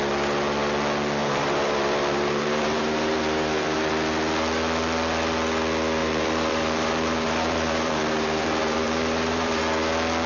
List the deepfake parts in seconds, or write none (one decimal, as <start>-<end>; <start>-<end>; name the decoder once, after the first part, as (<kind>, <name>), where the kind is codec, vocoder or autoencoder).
1.2-3.9 (vocoder, BigVGAN v2); 6.0-9.6